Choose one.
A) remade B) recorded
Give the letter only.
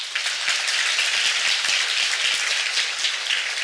B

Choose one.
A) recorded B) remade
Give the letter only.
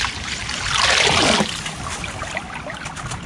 A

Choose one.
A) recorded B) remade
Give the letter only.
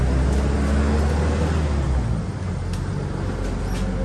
A